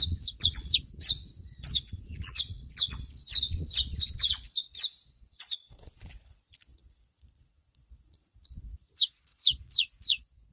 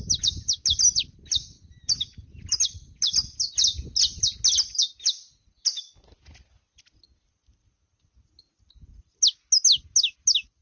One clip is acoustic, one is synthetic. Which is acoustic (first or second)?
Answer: second